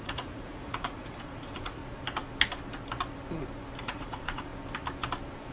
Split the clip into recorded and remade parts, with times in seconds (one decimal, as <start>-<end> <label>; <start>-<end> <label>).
0.0-1.8 remade; 1.8-3.8 recorded; 3.8-4.5 remade; 4.5-5.5 recorded